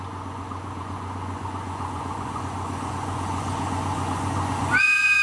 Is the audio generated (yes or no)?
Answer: yes